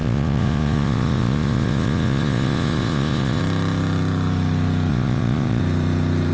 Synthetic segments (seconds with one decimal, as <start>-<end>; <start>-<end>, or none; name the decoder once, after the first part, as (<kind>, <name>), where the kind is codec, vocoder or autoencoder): 0.0-3.4 (vocoder, Vocos); 4.9-5.6